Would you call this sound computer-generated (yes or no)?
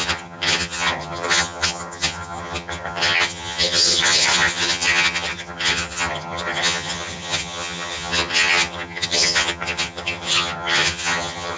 yes